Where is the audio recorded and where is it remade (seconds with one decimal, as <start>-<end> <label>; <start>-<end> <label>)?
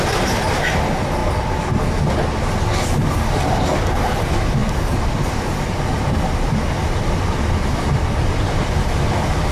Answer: 0.0-9.5 recorded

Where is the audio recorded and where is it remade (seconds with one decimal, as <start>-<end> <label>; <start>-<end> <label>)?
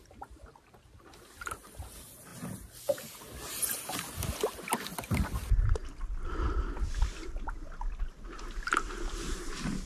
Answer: 0.0-9.9 recorded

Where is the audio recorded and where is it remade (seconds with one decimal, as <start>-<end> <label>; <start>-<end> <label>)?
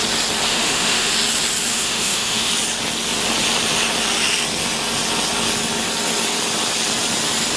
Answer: 0.0-0.5 recorded; 0.5-1.1 remade; 1.1-1.7 recorded; 1.7-2.5 remade; 2.5-7.6 recorded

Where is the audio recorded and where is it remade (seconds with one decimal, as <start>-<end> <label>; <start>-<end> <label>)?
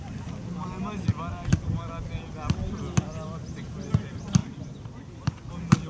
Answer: 0.0-5.9 recorded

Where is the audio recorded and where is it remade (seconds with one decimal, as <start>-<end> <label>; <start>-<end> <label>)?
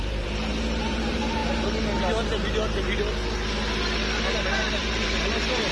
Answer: 0.0-1.4 remade; 1.4-4.8 recorded; 4.8-5.7 remade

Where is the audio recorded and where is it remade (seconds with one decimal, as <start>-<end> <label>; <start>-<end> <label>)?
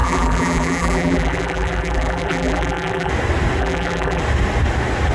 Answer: 0.0-3.1 remade; 3.1-3.6 recorded; 3.6-4.2 remade; 4.2-5.1 recorded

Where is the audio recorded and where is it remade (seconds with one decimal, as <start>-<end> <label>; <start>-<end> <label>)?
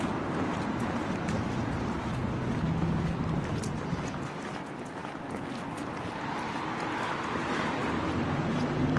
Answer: 0.0-9.0 recorded